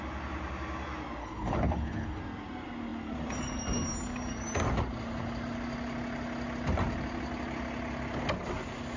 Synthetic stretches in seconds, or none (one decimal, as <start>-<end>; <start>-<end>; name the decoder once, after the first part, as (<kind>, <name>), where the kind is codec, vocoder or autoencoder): 1.2-2.2 (codec, HILCodec)